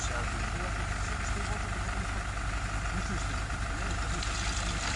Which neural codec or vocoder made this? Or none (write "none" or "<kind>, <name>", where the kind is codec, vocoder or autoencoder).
none